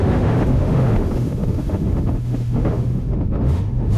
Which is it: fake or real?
fake